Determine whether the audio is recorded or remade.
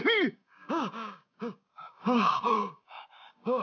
remade